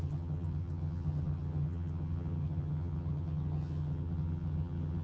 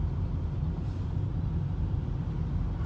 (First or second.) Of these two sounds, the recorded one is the second